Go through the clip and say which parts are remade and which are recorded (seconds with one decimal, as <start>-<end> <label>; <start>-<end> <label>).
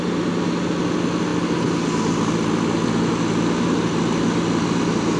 0.0-5.2 recorded